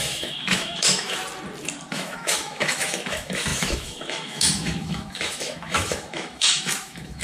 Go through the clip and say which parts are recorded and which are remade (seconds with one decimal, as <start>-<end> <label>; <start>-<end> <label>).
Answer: 0.0-1.2 remade; 1.2-1.9 recorded; 1.9-7.2 remade